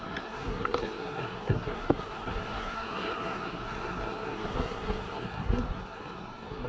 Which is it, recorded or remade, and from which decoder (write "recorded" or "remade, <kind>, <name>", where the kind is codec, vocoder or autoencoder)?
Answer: remade, codec, SNAC